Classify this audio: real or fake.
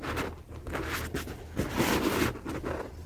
real